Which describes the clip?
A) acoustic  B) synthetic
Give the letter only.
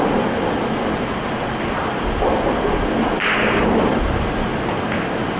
A